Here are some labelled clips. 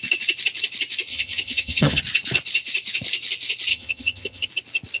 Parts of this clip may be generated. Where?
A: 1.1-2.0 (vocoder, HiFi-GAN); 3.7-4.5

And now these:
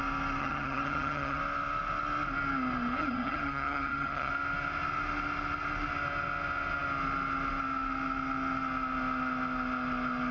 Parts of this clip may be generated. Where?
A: 0.4-1.4 (vocoder, HiFi-GAN); 3.0-4.3

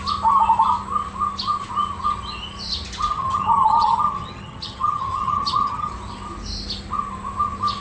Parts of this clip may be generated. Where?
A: 3.1-5.9 (vocoder, HiFi-GAN)